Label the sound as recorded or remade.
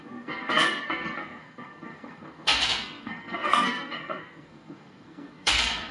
remade